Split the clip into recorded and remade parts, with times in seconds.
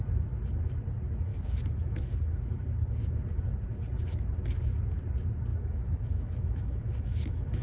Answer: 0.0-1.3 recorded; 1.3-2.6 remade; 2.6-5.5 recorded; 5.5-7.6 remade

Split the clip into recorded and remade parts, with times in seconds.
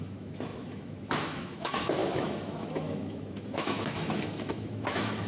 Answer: 0.0-5.3 remade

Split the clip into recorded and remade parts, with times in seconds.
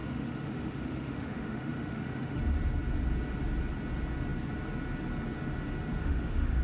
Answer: 0.0-2.4 remade; 2.4-6.0 recorded; 6.0-6.6 remade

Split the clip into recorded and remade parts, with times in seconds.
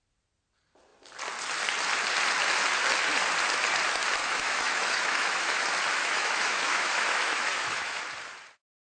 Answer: 0.0-4.2 recorded; 4.2-5.6 remade; 5.6-6.0 recorded; 6.0-8.0 remade; 8.0-8.9 recorded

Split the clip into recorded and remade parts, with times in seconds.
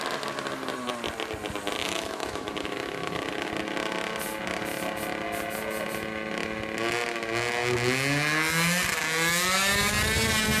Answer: 0.0-1.8 recorded; 1.8-3.5 remade; 3.5-10.6 recorded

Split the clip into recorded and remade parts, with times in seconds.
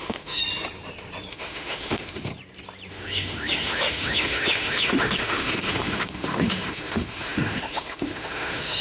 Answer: 0.0-0.4 remade; 0.4-1.3 recorded; 1.3-2.3 remade; 2.3-2.9 recorded; 2.9-8.8 remade